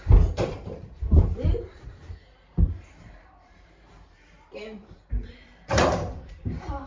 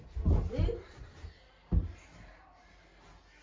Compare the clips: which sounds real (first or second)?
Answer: second